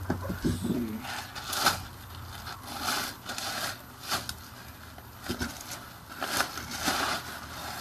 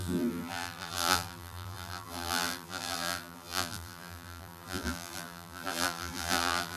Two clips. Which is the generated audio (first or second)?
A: second